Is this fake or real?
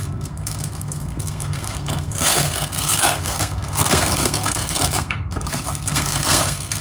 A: fake